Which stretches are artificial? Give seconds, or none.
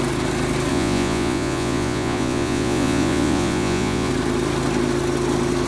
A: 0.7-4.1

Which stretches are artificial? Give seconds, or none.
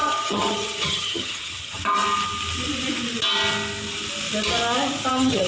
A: 0.0-1.8; 5.1-5.5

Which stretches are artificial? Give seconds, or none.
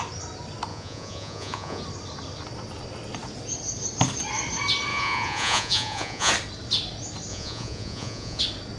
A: 0.7-1.8; 4.9-6.3; 7.3-8.4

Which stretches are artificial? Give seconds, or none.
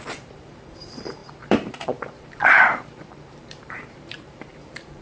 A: 0.0-5.0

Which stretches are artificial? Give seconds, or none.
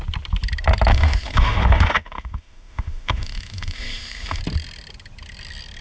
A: 0.9-4.4